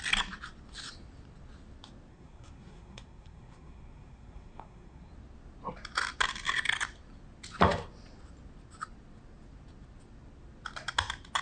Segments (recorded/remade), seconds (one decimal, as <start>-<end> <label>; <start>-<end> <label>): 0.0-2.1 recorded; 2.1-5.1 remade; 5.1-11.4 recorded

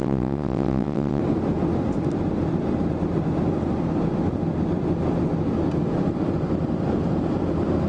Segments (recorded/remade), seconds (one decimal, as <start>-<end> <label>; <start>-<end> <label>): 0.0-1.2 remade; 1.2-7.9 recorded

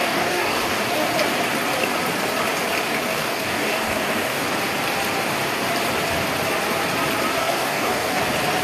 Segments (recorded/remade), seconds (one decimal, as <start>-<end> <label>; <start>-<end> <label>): 0.0-0.8 remade; 0.8-3.1 recorded; 3.1-4.4 remade; 4.4-7.4 recorded; 7.4-8.2 remade; 8.2-8.6 recorded